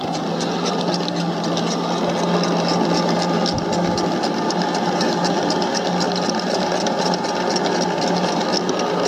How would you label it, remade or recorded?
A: recorded